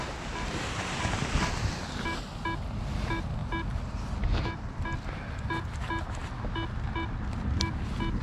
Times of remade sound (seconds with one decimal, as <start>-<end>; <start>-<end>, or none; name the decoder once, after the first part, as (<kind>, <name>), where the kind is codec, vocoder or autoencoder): none